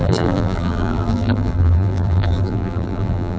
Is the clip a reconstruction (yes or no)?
yes